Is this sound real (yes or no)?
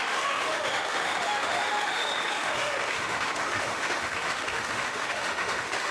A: no